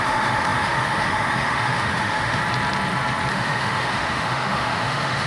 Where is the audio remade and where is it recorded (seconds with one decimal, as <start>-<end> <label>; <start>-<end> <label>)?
0.0-2.4 remade; 2.4-3.3 recorded; 3.3-5.3 remade